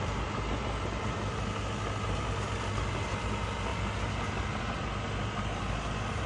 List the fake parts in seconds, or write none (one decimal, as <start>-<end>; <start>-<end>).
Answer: none